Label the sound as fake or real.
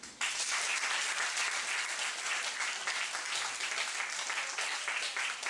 fake